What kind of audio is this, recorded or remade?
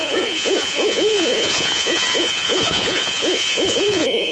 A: remade